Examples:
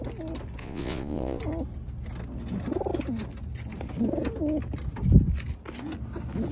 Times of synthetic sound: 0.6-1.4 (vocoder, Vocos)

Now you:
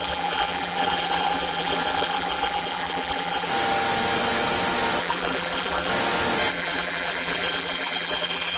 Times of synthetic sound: 0.0-3.5 (vocoder, BigVGAN v2); 5.0-5.9; 6.5-8.6

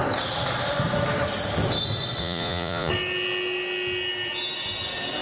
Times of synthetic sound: 2.2-2.9 (vocoder, Vocos)

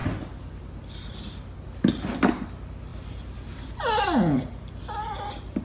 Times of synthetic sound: none

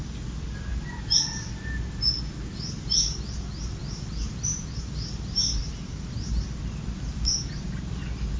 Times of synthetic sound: 3.8-6.1 (vocoder, BigVGAN v2)